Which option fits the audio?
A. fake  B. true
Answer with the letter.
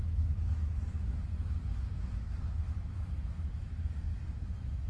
A